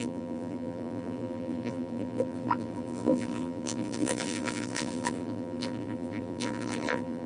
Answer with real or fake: fake